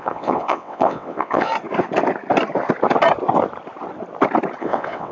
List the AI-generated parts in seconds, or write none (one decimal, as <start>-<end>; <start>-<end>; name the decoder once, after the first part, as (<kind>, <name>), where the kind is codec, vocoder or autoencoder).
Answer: 0.0-1.5 (vocoder, WaveNeXt); 4.6-5.1